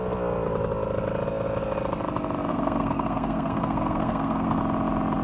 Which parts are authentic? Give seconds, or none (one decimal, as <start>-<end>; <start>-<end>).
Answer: 0.0-2.5; 4.6-5.2